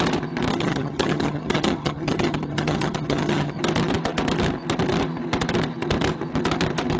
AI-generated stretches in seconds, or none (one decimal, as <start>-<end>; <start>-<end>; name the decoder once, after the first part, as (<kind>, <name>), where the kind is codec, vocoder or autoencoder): 0.5-3.6 (vocoder, HiFi-GAN)